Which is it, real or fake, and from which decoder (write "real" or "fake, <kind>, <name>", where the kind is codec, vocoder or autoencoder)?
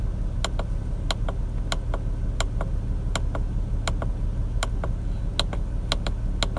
real